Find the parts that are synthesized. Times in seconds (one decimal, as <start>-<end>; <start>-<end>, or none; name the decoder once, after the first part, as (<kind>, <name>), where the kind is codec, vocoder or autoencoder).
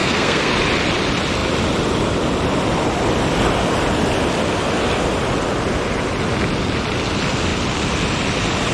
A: 0.0-0.5 (codec, SNAC)